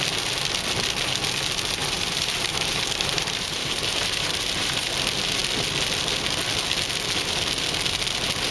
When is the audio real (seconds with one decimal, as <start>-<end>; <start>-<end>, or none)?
0.0-1.8; 4.9-8.5